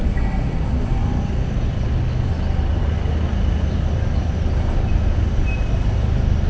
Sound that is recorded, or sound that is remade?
recorded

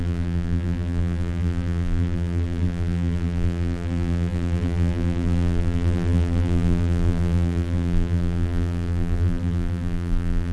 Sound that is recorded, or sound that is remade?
remade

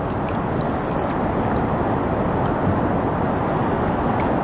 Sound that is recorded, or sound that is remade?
recorded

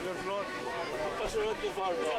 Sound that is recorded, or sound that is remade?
remade